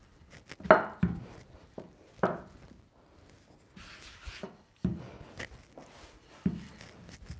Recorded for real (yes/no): yes